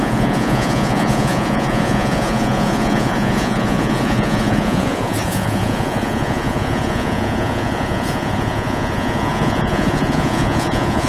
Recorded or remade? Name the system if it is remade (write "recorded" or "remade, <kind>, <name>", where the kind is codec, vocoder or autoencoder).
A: remade, vocoder, Vocos